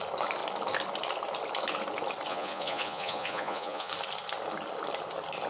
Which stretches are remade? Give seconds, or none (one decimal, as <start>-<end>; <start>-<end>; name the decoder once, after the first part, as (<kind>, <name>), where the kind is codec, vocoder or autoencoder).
2.3-3.9 (vocoder, Vocos)